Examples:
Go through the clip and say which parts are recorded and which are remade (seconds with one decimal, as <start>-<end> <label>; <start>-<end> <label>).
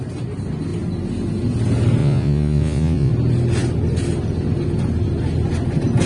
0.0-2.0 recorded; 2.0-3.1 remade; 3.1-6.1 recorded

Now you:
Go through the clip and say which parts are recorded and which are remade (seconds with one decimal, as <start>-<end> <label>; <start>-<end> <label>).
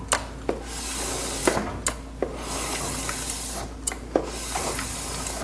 0.0-5.4 recorded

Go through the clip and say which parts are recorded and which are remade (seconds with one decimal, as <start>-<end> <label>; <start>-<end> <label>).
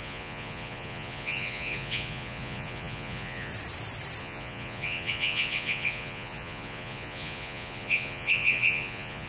0.0-3.5 remade; 3.5-4.2 recorded; 4.2-9.3 remade